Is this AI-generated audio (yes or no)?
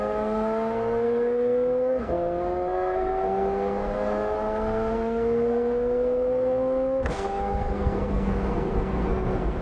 yes